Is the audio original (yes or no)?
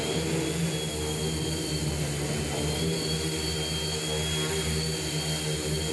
yes